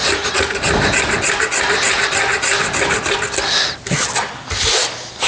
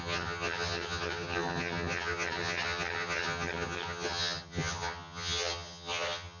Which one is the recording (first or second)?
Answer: first